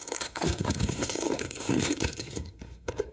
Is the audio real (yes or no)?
no